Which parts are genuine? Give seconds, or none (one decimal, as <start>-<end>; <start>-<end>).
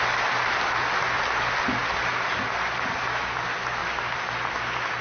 0.0-5.0